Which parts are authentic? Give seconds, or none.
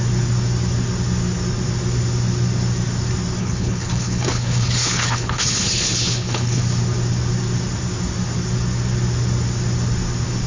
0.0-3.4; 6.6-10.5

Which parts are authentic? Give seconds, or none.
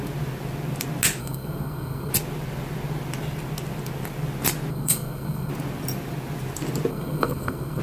0.0-1.2; 2.1-4.7; 5.5-6.9